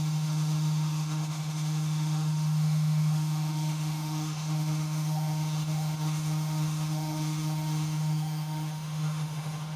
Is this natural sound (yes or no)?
no